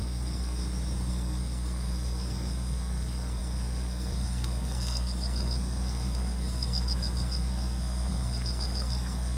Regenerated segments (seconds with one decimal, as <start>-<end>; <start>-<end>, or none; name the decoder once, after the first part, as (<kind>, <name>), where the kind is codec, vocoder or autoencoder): 0.0-0.6 (codec, SNAC); 1.1-9.4